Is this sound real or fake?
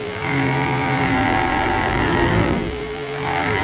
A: fake